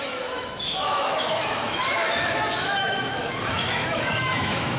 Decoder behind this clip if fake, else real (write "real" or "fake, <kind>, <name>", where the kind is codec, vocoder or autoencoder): fake, autoencoder, DAC-VAE